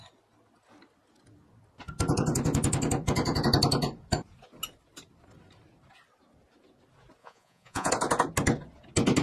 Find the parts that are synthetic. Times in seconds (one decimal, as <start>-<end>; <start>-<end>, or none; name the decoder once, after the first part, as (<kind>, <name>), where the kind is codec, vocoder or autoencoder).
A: 7.2-7.9 (vocoder, Vocos)